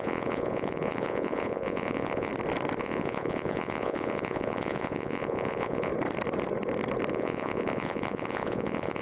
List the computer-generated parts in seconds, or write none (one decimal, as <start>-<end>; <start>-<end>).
0.0-2.3; 2.8-5.9; 7.1-9.0